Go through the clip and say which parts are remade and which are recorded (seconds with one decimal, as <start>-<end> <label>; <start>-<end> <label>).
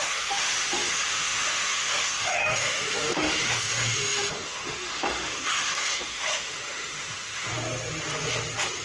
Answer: 0.0-7.5 remade; 7.5-8.8 recorded